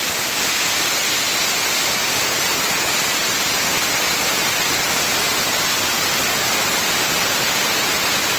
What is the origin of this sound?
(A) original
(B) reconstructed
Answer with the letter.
A